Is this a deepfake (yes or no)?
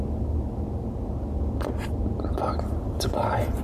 no